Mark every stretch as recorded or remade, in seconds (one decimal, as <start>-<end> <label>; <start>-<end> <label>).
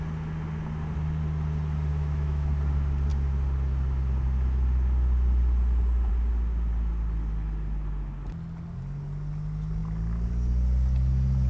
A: 0.0-1.9 recorded; 1.9-2.5 remade; 2.5-11.5 recorded